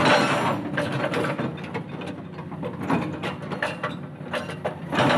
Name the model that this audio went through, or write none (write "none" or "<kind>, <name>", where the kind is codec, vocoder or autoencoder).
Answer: none